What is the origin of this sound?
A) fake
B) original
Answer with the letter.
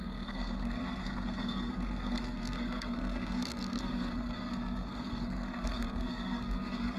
A